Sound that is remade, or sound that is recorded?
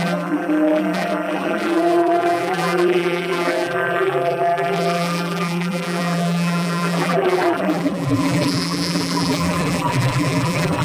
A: remade